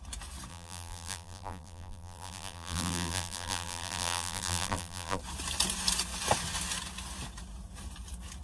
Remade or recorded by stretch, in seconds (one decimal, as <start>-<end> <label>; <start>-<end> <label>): 0.0-0.5 recorded; 0.5-5.2 remade; 5.2-8.4 recorded